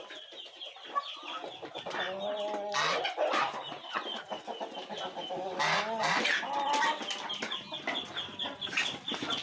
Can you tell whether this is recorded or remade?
recorded